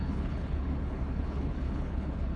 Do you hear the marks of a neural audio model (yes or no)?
yes